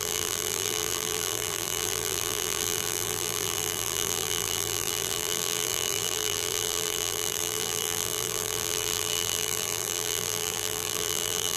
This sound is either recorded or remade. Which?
remade